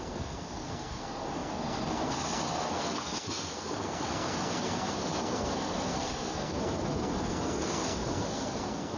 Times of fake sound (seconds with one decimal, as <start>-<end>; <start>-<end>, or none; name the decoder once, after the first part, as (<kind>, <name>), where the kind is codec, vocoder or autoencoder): 0.0-9.0 (codec, SNAC)